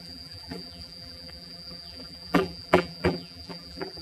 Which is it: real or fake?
fake